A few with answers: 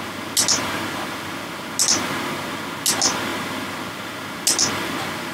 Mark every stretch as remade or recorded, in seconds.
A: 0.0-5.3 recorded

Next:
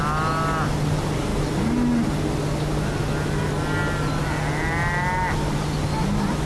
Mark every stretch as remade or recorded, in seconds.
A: 0.0-6.5 recorded

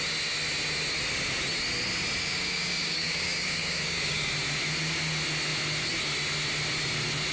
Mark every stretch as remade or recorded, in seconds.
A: 0.0-2.2 recorded; 2.2-4.3 remade; 4.3-7.3 recorded